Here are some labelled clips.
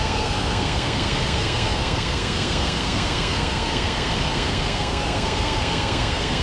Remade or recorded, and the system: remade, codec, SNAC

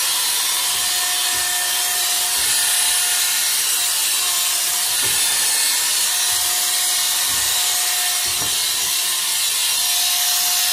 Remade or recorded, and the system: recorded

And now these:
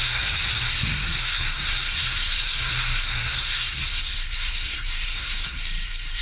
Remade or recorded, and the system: remade, codec, SNAC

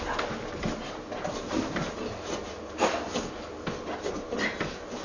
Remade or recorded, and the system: recorded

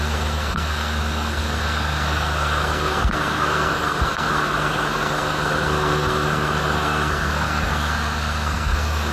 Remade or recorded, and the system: remade, codec, SNAC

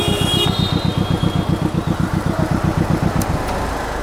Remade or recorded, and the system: recorded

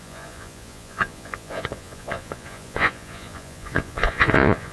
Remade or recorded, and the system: remade, vocoder, Vocos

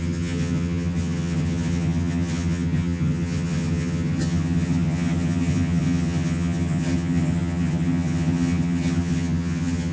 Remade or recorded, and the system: remade, vocoder, HiFi-GAN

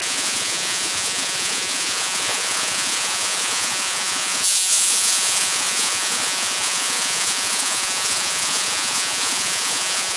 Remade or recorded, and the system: remade, vocoder, Vocos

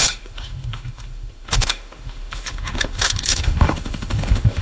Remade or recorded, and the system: remade, autoencoder, DAC-VAE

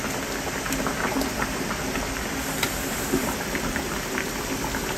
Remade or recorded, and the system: recorded